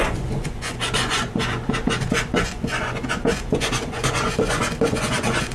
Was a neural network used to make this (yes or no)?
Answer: yes